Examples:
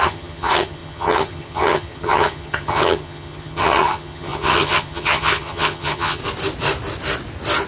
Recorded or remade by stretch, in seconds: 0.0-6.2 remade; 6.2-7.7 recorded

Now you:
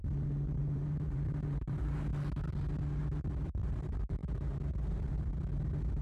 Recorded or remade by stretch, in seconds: 0.0-0.6 recorded; 0.6-2.1 remade; 2.1-3.0 recorded; 3.0-6.0 remade

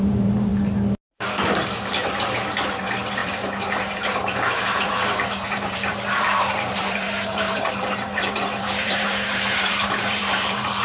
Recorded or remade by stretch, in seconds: 0.0-0.5 remade; 0.5-2.0 recorded; 2.0-10.8 remade

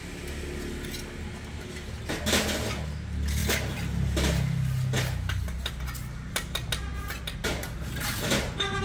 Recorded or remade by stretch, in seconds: 0.0-8.8 recorded

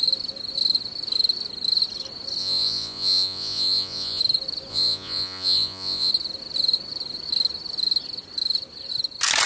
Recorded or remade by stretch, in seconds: 0.0-2.4 recorded; 2.4-4.2 remade; 4.2-4.7 recorded; 4.7-6.1 remade; 6.1-9.5 recorded